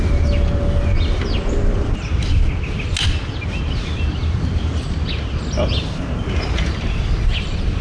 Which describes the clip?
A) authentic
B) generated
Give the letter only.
A